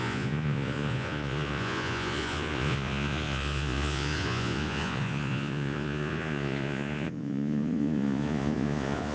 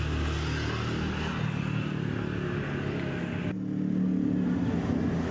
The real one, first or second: second